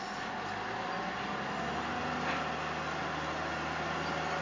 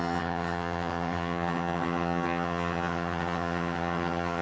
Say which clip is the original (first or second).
first